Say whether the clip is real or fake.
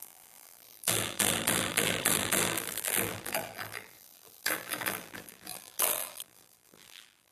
fake